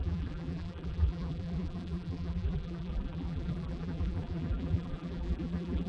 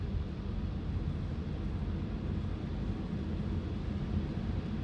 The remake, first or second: first